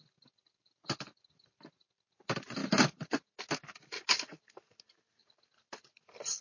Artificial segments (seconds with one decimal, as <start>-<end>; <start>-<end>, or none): none